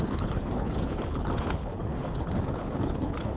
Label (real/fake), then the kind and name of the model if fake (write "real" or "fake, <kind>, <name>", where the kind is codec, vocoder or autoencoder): fake, codec, HILCodec